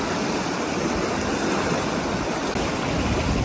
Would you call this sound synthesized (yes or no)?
no